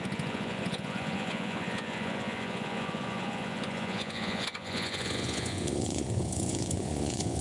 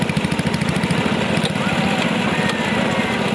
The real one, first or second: second